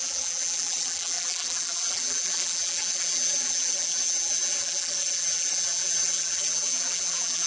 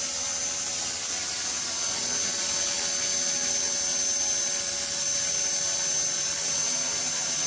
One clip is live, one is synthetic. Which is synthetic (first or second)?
first